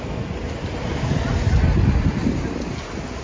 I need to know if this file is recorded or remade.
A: recorded